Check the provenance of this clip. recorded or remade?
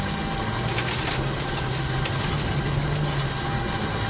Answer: recorded